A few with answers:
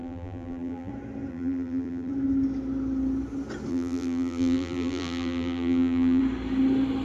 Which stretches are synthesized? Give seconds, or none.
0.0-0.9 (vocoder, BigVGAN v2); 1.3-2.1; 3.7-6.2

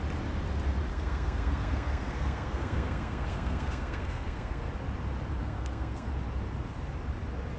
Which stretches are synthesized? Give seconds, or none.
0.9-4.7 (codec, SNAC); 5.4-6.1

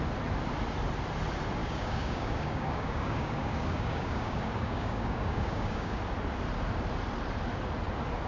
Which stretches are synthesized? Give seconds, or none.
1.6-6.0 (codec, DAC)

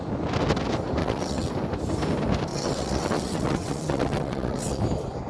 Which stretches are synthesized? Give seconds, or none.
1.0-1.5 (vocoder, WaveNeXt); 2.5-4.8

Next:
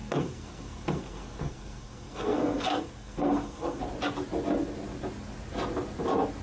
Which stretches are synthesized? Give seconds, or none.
0.0-3.8 (codec, SNAC)